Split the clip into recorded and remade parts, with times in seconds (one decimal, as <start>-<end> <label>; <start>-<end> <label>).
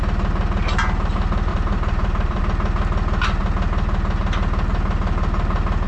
0.0-1.5 recorded; 1.5-2.4 remade; 2.4-5.9 recorded